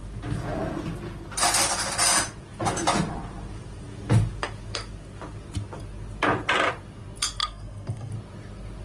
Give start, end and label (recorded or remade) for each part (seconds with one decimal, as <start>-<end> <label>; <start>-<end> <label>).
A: 0.0-7.4 recorded; 7.4-8.1 remade; 8.1-8.8 recorded